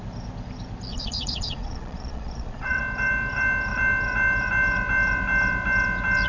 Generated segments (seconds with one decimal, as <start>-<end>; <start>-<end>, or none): 0.9-2.8